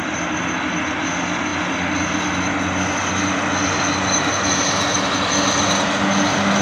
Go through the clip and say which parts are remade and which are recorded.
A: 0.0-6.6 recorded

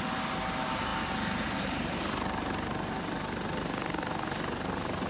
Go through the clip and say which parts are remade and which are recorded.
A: 0.0-5.1 recorded